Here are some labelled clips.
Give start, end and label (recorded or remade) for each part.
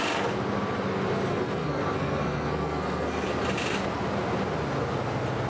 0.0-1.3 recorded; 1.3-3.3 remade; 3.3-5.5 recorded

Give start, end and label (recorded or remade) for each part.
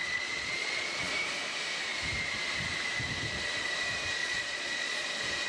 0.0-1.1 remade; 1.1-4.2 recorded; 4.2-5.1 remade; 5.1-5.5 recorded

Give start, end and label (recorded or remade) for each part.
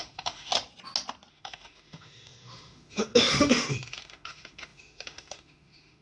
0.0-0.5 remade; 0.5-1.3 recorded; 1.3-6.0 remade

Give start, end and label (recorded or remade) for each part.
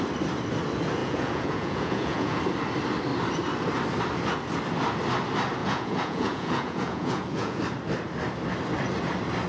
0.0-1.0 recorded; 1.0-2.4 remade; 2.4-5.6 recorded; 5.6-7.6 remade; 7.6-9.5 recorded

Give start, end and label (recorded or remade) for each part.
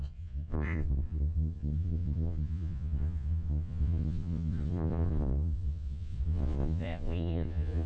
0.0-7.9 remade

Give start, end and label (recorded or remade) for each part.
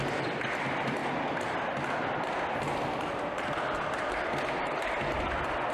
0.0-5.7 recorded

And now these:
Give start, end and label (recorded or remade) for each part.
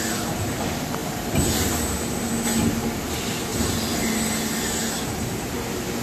0.0-3.5 recorded; 3.5-4.1 remade; 4.1-6.0 recorded